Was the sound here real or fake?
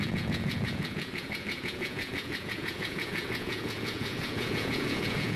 fake